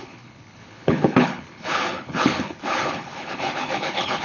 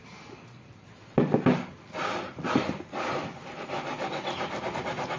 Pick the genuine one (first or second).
second